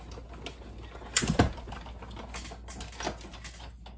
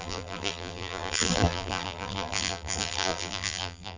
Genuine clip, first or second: first